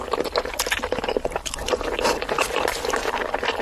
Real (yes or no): yes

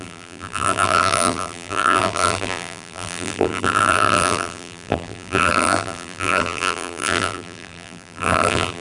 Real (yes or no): no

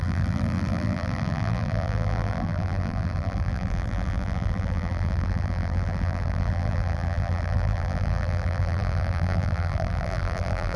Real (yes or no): no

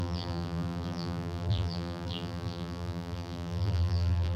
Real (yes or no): no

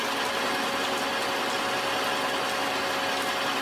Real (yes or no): yes